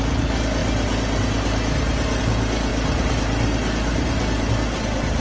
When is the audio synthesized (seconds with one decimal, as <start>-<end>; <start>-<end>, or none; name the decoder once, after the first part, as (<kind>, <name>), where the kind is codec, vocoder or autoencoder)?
none